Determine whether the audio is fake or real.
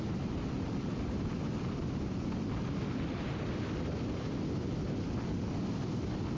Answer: real